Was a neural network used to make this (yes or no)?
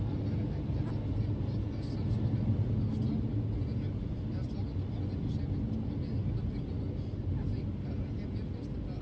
no